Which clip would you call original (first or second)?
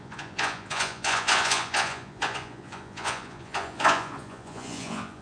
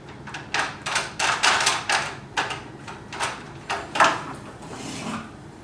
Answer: second